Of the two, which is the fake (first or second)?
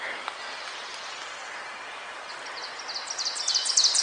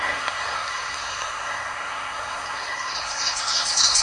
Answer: second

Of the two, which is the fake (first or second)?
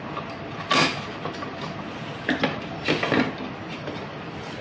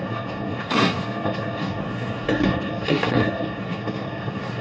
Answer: second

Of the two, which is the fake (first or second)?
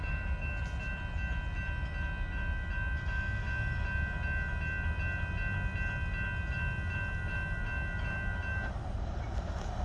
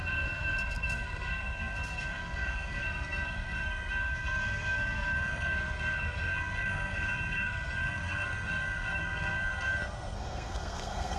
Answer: second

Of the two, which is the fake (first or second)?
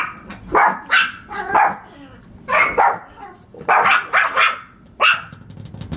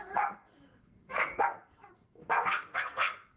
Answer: second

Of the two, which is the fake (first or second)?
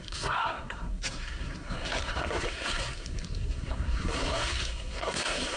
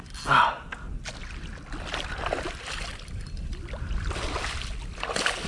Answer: first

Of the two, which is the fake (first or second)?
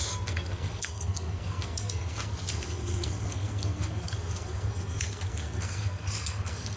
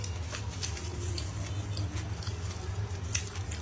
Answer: first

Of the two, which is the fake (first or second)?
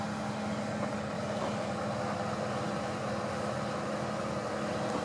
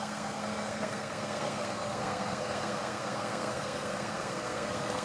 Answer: second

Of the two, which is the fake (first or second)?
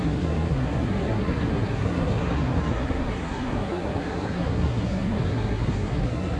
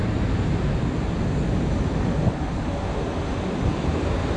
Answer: first